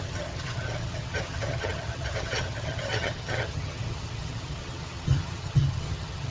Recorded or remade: remade